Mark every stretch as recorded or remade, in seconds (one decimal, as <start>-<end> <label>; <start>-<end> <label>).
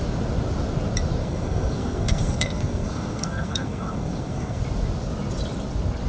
0.0-1.2 recorded; 1.2-4.6 remade; 4.6-6.1 recorded